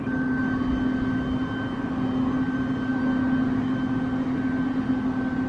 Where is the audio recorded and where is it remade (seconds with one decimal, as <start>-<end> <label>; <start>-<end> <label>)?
0.0-5.5 recorded